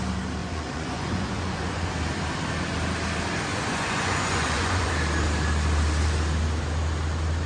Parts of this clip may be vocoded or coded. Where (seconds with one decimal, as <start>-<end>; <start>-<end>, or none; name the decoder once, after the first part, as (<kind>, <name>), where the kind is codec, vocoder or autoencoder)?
0.4-1.9 (vocoder, Vocos); 3.5-4.9